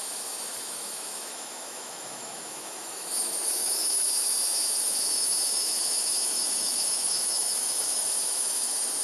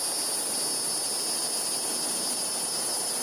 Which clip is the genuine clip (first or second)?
second